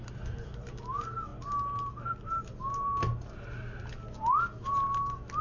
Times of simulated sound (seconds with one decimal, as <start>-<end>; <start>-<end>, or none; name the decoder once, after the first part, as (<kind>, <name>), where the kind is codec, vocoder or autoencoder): none